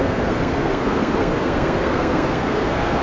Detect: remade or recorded remade